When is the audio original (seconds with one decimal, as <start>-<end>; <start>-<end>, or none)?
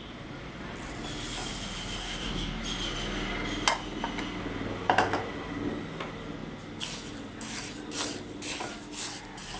0.0-2.0; 2.6-9.6